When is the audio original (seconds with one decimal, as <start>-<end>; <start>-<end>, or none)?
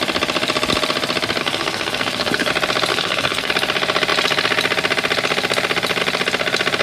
0.0-1.4; 2.5-2.9; 3.5-6.8